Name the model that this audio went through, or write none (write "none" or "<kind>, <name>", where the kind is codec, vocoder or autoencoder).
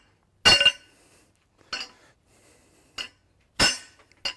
none